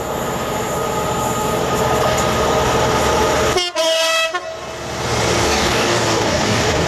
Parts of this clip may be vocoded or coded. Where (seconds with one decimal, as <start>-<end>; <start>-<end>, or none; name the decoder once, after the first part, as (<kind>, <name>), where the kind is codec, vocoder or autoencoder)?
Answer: 3.8-4.3 (codec, DAC); 5.4-6.9